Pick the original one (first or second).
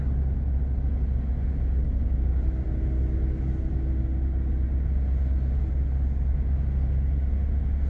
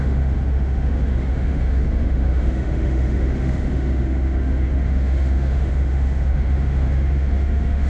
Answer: first